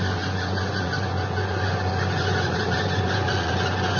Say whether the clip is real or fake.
fake